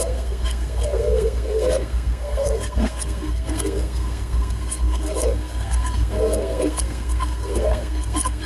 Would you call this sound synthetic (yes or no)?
yes